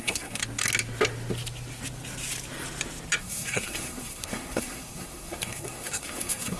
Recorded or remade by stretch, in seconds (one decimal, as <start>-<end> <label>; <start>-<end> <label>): 0.0-0.4 remade; 0.4-3.2 recorded; 3.2-6.6 remade